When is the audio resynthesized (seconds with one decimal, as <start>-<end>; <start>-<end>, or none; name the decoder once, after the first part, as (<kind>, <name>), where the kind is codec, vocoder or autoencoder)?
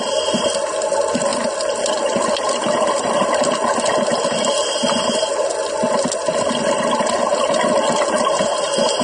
none